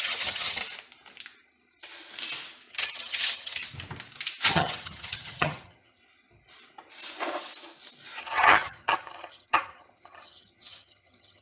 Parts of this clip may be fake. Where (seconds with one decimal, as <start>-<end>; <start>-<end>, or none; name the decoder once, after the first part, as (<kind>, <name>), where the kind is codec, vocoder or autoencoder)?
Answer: 0.0-0.6 (vocoder, HiFi-GAN); 2.7-3.6; 4.5-6.0; 8.2-11.4